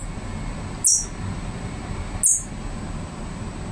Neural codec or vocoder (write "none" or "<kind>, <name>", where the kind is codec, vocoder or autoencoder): none